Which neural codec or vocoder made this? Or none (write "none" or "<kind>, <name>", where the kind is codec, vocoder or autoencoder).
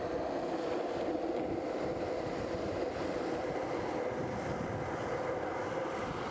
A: none